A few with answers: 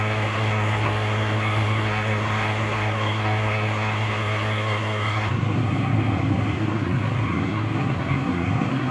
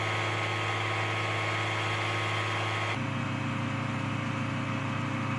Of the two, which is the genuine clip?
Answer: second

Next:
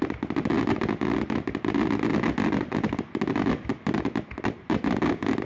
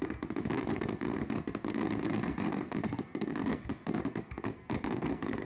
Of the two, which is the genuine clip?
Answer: first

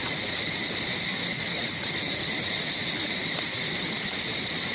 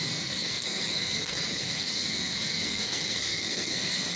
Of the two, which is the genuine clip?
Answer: first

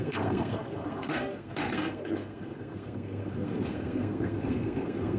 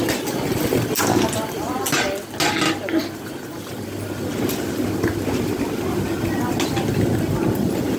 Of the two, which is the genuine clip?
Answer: second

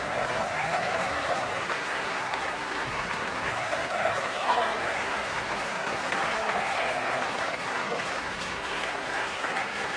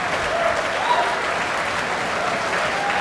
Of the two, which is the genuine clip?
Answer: second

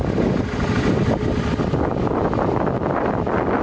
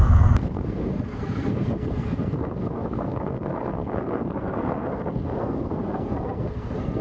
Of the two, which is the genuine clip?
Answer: first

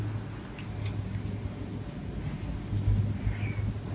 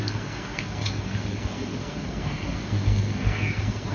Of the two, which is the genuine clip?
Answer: first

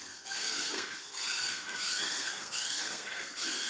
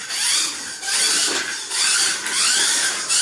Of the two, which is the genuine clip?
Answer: second